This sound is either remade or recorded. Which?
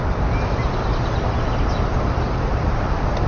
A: recorded